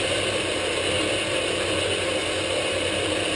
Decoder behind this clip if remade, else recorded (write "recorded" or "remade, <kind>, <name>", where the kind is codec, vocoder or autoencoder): recorded